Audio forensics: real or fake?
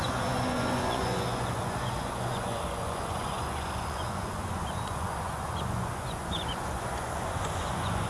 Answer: fake